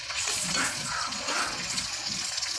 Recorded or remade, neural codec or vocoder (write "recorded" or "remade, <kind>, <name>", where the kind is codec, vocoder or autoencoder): remade, vocoder, Vocos